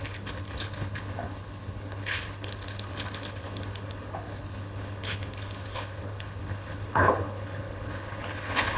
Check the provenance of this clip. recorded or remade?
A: remade